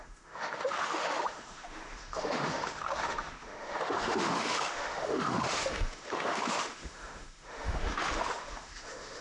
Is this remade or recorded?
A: remade